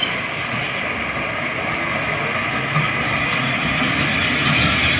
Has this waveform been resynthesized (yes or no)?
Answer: no